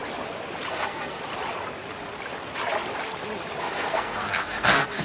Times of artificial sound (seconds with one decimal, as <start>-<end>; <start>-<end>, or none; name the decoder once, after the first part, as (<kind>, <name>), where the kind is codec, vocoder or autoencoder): 0.7-1.2 (codec, SNAC); 3.6-5.0